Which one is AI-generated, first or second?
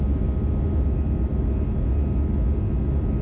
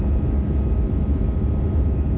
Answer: second